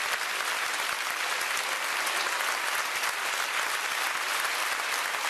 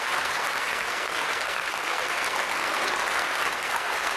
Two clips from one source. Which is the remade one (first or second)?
second